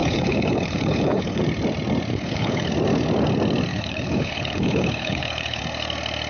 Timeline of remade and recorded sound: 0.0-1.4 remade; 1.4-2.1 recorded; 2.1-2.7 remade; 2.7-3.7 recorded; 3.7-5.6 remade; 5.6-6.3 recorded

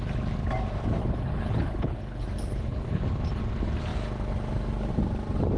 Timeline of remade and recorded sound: 0.0-1.0 recorded; 1.0-3.0 remade; 3.0-5.6 recorded

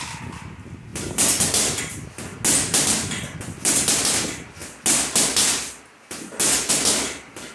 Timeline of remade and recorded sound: 0.0-7.5 recorded